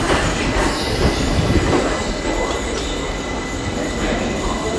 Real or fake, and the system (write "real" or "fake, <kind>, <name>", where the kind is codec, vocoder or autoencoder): real